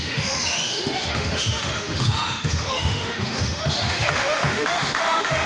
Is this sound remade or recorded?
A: remade